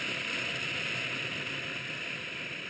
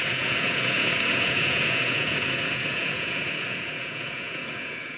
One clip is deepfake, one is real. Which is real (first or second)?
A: first